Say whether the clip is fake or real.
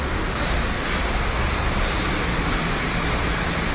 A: real